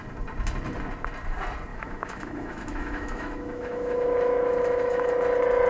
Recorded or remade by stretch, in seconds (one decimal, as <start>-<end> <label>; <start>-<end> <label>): 0.0-1.7 recorded; 1.7-5.1 remade; 5.1-5.7 recorded